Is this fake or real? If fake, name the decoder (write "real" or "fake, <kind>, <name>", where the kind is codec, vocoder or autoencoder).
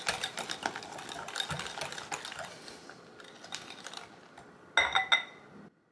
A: real